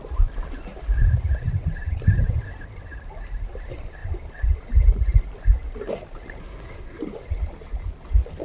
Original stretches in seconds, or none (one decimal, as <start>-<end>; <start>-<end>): 0.0-6.4; 7.0-8.4